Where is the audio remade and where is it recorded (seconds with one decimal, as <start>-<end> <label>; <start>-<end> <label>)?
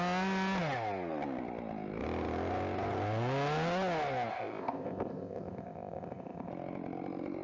0.0-4.3 recorded; 4.3-6.5 remade; 6.5-7.4 recorded